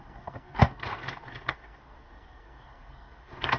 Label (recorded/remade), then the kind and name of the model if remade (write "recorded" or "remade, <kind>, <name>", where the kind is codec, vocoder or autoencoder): remade, codec, SNAC